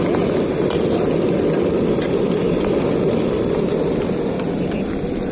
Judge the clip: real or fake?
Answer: real